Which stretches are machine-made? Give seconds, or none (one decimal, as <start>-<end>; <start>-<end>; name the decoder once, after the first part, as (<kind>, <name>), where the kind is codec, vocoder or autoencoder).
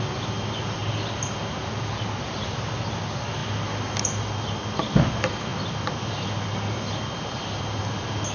none